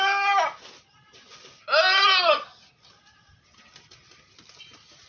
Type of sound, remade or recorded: recorded